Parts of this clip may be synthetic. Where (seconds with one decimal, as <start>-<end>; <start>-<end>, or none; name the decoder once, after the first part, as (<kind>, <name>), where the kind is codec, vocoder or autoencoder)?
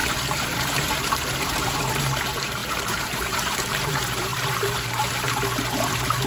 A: 0.0-6.3 (vocoder, BigVGAN v2)